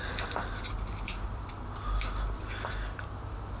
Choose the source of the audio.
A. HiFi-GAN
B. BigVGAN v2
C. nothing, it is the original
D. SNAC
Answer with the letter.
C